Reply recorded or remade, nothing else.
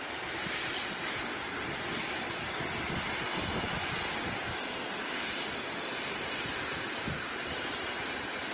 recorded